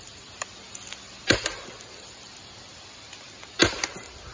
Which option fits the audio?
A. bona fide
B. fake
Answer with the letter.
A